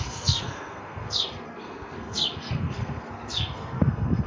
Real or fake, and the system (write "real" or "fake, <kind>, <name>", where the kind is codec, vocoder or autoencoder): fake, codec, SNAC